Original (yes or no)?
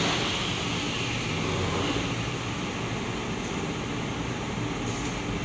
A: yes